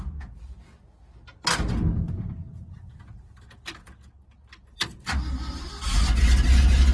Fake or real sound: real